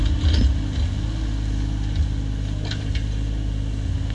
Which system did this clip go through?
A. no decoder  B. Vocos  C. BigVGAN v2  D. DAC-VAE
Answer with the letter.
A